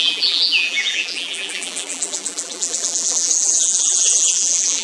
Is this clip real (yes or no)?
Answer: no